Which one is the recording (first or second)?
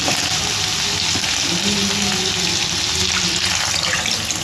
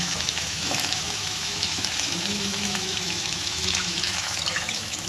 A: first